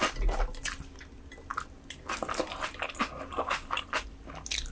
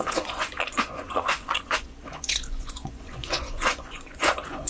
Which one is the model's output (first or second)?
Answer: second